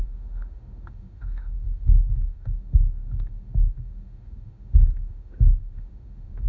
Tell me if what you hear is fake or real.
fake